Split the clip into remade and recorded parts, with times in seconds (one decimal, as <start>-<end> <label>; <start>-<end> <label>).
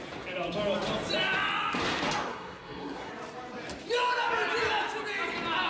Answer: 0.0-2.3 recorded; 2.3-3.1 remade; 3.1-5.7 recorded